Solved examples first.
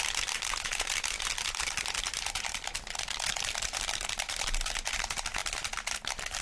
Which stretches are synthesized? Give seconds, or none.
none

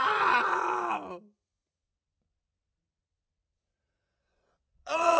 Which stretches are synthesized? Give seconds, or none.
0.0-0.7 (vocoder, Vocos); 3.8-5.2

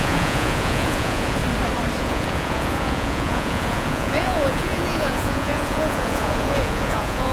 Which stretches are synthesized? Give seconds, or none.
0.0-1.4 (vocoder, Vocos); 2.0-7.3